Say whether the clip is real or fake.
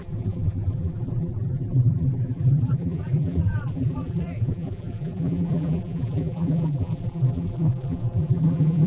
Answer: fake